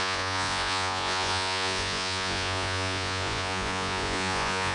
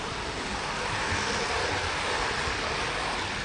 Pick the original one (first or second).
second